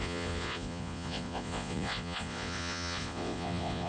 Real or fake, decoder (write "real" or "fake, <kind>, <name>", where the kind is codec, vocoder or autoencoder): fake, vocoder, Vocos